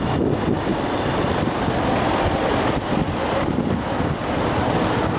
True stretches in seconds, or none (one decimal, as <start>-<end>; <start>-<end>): 0.0-0.7; 1.6-5.2